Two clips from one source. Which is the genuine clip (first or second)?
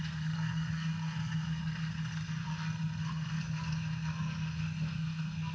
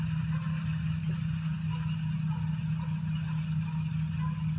second